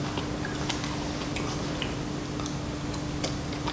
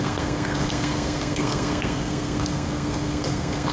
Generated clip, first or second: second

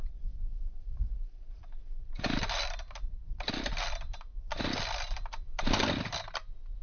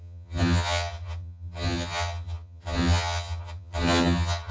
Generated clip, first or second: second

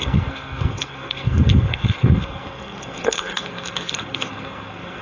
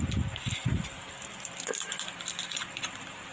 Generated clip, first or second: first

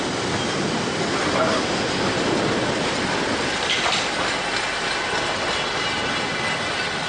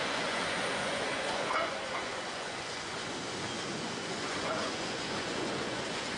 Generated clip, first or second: second